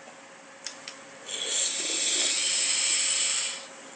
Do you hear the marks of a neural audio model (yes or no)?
no